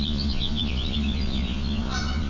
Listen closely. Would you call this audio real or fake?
fake